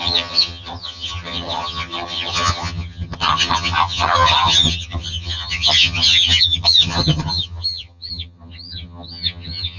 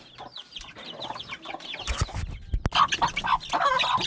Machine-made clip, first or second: first